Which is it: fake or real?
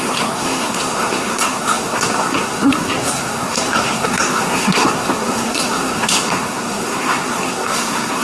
fake